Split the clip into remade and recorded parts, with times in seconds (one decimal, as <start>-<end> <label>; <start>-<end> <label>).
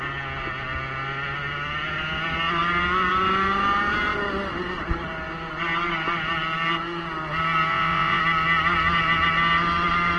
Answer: 0.0-7.7 recorded; 7.7-8.2 remade; 8.2-10.2 recorded